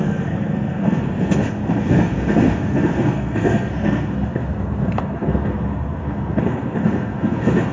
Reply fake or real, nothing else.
fake